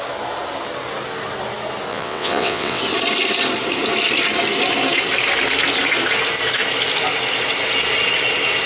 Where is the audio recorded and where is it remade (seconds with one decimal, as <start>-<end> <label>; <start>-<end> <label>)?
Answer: 0.0-1.9 recorded; 1.9-2.8 remade; 2.8-8.7 recorded